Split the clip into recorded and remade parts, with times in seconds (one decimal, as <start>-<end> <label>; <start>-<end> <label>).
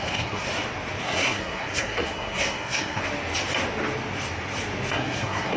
0.0-0.5 remade; 0.5-1.0 recorded; 1.0-3.0 remade; 3.0-4.9 recorded; 4.9-5.6 remade